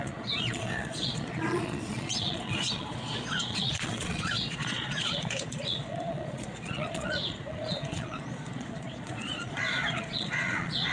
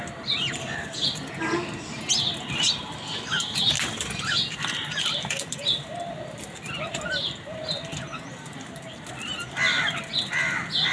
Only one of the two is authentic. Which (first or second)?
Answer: second